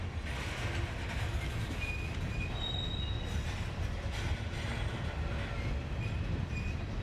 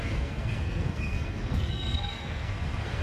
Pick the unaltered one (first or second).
first